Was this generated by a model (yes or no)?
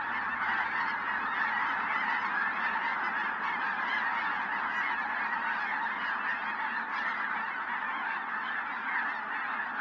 no